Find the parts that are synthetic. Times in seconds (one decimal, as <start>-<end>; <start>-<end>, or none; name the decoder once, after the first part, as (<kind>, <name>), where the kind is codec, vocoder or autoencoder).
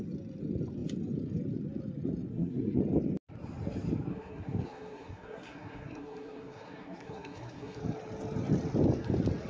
2.3-2.8 (codec, SNAC); 4.1-7.8